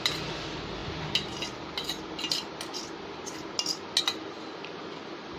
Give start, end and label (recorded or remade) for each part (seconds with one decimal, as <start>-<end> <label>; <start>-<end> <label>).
0.0-5.4 recorded